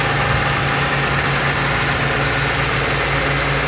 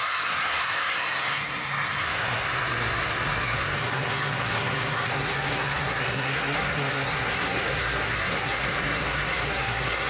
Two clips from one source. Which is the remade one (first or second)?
second